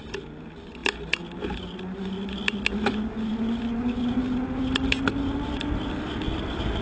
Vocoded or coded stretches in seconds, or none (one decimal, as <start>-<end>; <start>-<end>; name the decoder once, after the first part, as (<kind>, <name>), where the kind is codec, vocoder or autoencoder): none